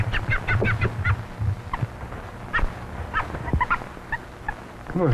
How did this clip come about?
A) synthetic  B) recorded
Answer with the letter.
B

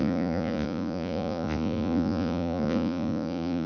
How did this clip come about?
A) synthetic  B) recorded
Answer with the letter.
A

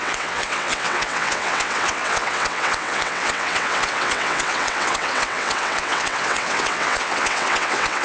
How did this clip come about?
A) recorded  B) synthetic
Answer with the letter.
B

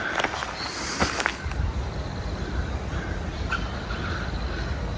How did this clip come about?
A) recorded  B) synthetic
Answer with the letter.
A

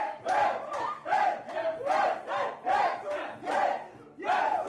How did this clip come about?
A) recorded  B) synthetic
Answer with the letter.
A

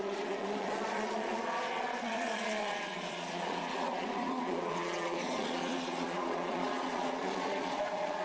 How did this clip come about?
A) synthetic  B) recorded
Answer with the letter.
A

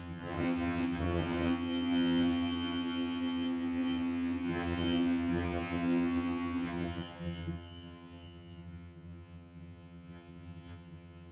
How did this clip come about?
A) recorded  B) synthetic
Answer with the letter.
B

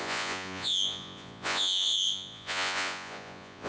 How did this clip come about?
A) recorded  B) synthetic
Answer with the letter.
B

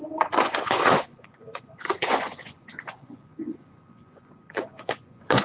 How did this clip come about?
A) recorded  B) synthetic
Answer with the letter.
B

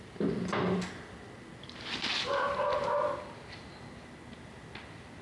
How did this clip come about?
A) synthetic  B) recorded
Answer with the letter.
B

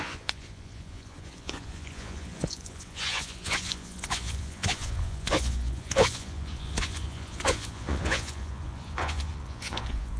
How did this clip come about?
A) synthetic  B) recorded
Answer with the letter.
A